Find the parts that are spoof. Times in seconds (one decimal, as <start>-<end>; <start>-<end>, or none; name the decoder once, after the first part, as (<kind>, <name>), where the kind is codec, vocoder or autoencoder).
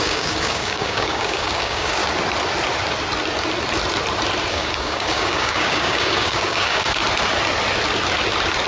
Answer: 0.0-2.0 (codec, DAC); 4.5-7.0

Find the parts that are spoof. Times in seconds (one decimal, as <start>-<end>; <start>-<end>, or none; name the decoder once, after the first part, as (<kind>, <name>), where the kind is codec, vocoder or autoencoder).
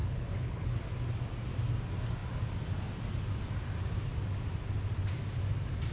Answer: 0.0-0.8 (codec, HILCodec)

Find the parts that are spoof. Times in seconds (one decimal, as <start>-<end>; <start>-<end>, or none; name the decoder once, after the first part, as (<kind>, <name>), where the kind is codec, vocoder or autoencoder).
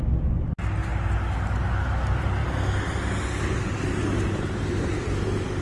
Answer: none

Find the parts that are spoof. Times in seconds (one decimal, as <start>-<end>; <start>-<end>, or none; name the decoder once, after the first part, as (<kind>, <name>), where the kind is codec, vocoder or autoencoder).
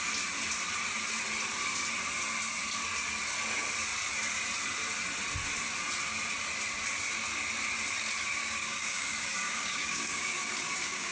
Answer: 8.4-11.1 (codec, DAC)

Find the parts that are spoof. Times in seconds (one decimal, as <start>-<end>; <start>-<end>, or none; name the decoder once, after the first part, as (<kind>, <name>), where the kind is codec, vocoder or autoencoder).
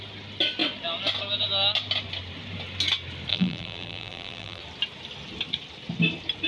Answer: 3.3-4.6 (vocoder, BigVGAN v2)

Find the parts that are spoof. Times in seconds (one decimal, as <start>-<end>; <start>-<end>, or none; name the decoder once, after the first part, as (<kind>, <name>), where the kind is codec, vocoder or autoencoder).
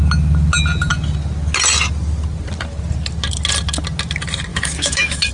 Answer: 4.5-5.3 (autoencoder, DAC-VAE)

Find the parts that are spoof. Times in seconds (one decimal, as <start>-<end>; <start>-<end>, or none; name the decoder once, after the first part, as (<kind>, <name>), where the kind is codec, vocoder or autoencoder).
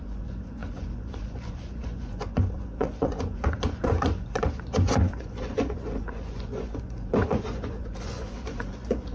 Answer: 0.0-9.1 (vocoder, Vocos)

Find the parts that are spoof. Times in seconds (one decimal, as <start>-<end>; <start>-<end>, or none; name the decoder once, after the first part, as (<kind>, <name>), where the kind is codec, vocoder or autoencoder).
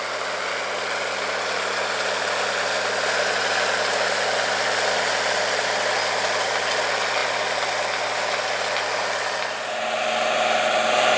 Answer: none